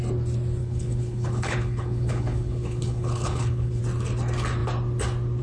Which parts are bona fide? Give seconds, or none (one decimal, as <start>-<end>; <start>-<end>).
0.0-0.6; 3.8-5.4